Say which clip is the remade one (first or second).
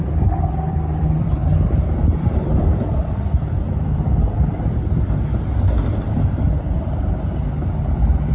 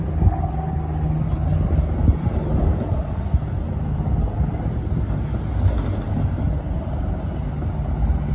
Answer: first